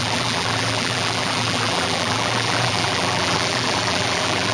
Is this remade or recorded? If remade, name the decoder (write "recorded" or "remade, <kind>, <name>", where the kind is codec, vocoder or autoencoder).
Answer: remade, vocoder, BigVGAN v2